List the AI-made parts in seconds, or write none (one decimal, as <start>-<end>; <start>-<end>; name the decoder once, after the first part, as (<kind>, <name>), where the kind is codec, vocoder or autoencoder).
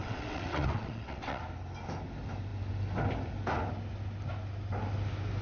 0.0-1.4 (vocoder, WaveNeXt)